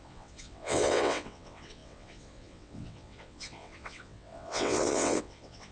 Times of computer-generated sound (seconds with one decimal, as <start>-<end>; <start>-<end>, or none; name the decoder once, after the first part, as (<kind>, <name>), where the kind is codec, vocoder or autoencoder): 0.0-5.7 (vocoder, WaveNeXt)

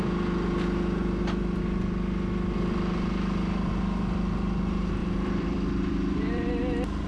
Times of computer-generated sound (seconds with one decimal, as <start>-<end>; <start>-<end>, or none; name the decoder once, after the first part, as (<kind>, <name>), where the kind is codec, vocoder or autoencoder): 1.0-1.6 (vocoder, BigVGAN v2); 5.0-6.6

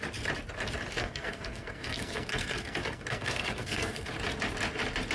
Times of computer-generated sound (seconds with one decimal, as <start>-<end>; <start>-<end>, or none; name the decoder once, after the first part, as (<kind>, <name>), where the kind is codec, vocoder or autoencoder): 1.0-4.1 (codec, SNAC)

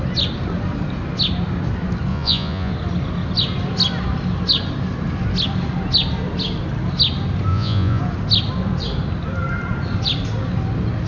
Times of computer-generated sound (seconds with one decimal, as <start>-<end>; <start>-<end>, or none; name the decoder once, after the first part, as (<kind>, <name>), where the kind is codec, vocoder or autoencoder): 2.1-2.7 (vocoder, Vocos); 7.5-8.0

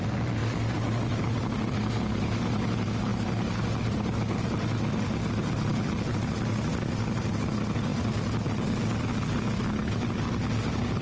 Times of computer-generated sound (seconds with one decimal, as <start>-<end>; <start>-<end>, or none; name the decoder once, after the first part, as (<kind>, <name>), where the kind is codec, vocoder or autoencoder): none

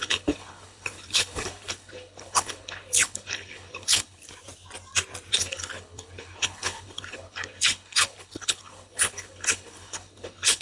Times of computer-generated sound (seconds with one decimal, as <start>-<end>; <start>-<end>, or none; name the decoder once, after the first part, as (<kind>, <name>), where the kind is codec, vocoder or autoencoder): 0.0-4.2 (codec, HILCodec); 5.3-10.6